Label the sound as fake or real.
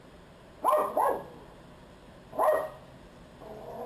real